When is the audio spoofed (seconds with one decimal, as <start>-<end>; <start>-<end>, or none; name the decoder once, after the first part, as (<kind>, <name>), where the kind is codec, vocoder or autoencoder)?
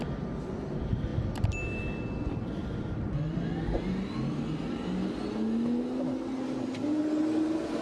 none